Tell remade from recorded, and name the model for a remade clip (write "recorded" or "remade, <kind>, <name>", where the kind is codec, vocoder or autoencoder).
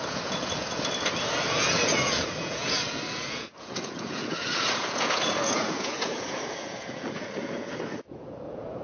remade, vocoder, Vocos